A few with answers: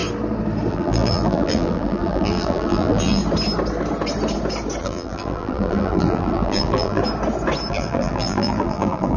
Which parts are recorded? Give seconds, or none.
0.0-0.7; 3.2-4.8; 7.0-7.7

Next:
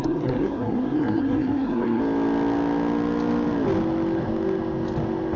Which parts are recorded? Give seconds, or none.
2.0-5.4

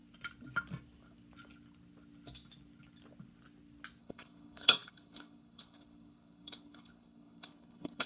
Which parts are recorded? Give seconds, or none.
0.0-4.0

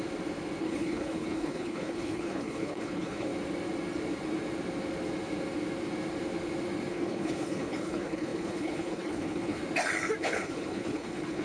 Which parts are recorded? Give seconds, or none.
0.0-0.6; 3.3-6.9; 9.6-10.2

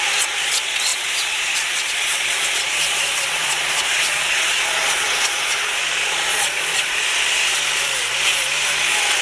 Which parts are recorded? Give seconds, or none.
0.0-0.9; 5.8-6.3; 7.0-9.2

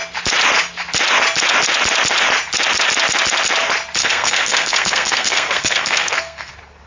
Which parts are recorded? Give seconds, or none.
0.0-4.0; 6.5-6.9

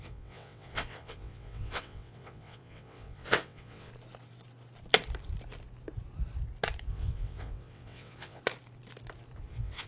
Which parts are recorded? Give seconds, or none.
3.9-6.9; 8.4-9.5

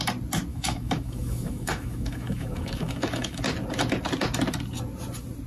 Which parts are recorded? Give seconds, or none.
0.0-0.5; 3.4-5.5